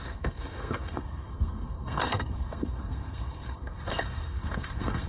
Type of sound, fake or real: fake